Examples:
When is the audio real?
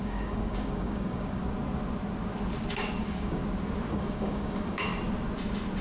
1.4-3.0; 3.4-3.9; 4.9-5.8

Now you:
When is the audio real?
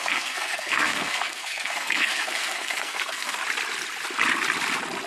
3.4-5.1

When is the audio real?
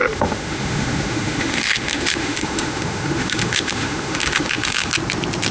4.9-5.5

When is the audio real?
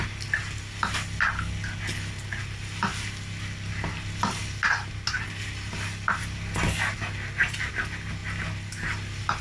0.0-9.4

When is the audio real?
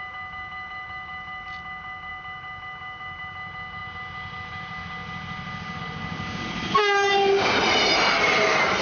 0.0-8.8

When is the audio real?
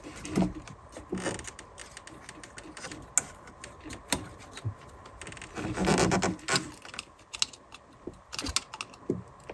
0.0-9.5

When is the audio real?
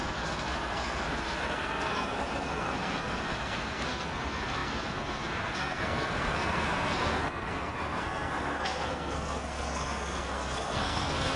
none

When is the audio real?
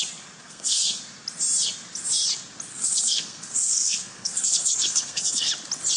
0.0-0.4; 1.0-2.7; 5.5-6.0